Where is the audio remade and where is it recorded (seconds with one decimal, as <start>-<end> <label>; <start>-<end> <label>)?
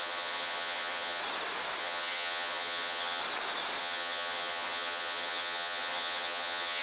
0.0-1.2 remade; 1.2-1.8 recorded; 1.8-3.2 remade; 3.2-3.8 recorded; 3.8-6.8 remade